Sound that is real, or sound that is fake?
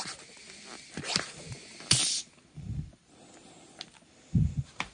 real